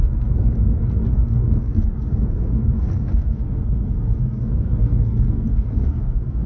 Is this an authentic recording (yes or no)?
no